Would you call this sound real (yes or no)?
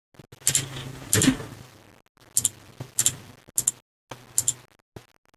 yes